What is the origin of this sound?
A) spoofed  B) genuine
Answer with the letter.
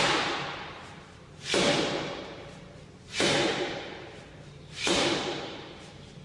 A